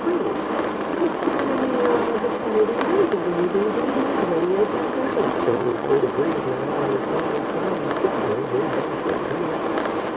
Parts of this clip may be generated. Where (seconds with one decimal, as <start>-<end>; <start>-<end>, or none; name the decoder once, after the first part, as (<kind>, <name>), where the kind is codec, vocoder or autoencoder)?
0.9-1.4 (vocoder, WaveNeXt); 5.1-6.0